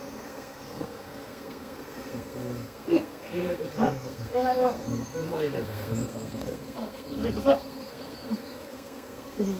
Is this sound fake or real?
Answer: fake